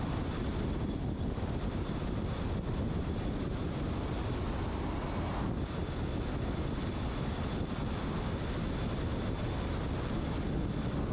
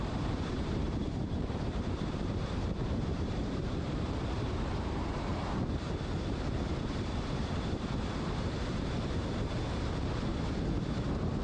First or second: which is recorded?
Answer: first